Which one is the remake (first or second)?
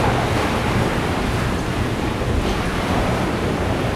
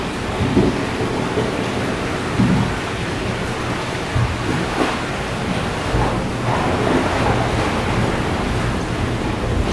first